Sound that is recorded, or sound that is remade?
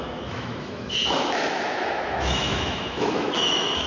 remade